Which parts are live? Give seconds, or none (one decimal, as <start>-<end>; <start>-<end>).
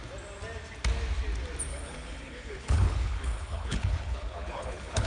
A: 0.0-1.7